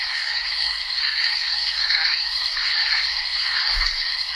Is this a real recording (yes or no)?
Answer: no